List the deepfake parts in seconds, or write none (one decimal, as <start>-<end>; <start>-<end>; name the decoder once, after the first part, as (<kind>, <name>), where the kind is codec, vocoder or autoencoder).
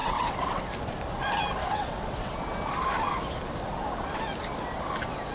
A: 0.0-0.6 (vocoder, WaveNeXt); 1.6-2.4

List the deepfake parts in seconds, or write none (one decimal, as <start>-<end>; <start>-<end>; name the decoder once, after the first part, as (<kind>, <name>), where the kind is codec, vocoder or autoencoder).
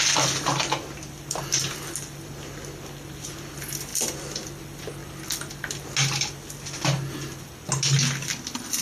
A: none